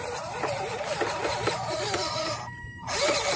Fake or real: real